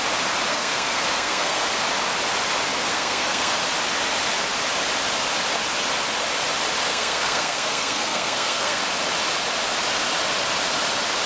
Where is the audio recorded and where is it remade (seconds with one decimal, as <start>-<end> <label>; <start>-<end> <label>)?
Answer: 0.0-0.5 recorded; 0.5-1.6 remade; 1.6-2.9 recorded; 2.9-3.6 remade; 3.6-6.9 recorded; 6.9-8.8 remade; 8.8-11.3 recorded